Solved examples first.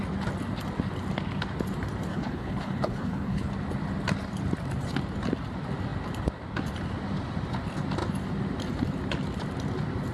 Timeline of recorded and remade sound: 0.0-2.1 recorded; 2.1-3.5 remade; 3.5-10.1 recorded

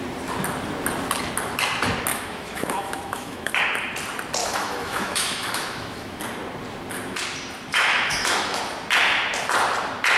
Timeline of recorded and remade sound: 0.0-2.1 recorded; 2.1-3.6 remade; 3.6-4.4 recorded; 4.4-6.2 remade; 6.2-7.7 recorded; 7.7-8.6 remade; 8.6-10.2 recorded

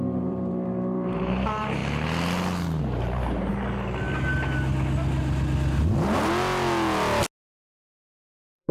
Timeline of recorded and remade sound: 0.0-1.8 remade; 1.8-2.8 recorded; 2.8-3.5 remade; 3.5-8.1 recorded; 8.1-8.7 remade

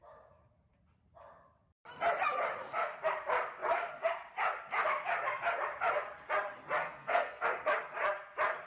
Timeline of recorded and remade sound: 0.0-6.8 recorded; 6.8-7.5 remade; 7.5-8.7 recorded

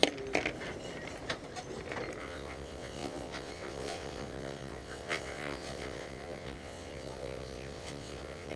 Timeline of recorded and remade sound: 0.0-2.2 recorded; 2.2-8.6 remade